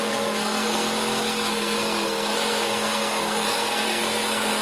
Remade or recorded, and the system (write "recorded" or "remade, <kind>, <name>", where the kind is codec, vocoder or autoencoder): remade, codec, SNAC